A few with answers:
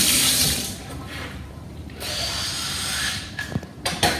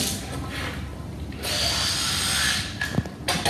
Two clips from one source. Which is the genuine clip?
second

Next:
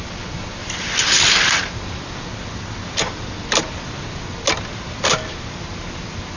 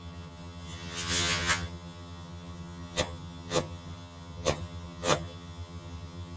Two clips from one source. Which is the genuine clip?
first